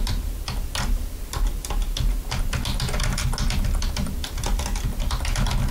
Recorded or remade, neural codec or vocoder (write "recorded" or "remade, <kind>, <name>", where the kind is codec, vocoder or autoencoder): recorded